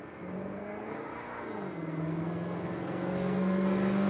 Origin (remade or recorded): remade